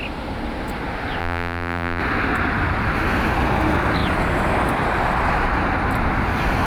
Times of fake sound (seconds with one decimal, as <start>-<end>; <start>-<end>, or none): 1.2-2.0